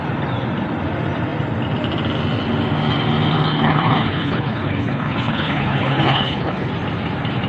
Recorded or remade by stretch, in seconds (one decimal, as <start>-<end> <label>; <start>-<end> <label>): 0.0-3.5 recorded; 3.5-6.7 remade; 6.7-7.5 recorded